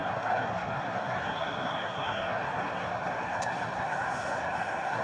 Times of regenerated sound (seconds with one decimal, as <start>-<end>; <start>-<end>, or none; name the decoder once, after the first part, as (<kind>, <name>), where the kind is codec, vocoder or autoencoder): 0.0-5.0 (codec, SNAC)